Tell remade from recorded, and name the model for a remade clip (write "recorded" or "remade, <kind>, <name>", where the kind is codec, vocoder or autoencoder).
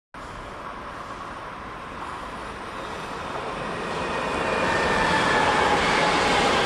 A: recorded